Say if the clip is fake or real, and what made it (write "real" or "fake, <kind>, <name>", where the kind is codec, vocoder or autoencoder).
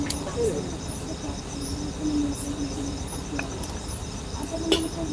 real